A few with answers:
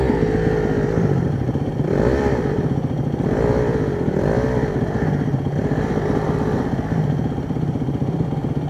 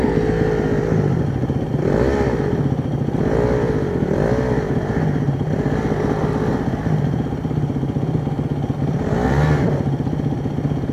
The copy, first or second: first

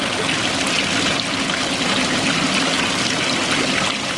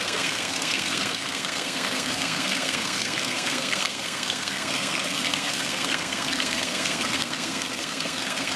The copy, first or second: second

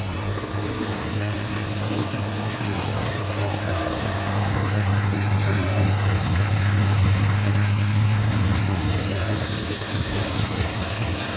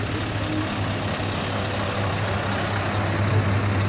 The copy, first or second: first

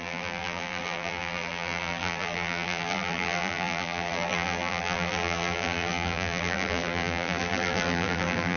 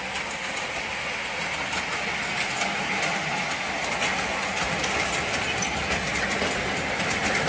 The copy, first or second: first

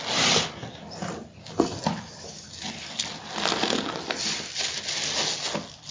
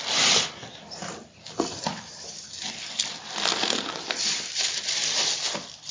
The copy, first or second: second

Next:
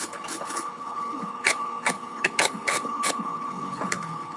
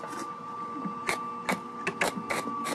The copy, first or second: first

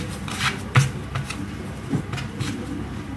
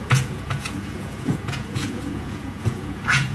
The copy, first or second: second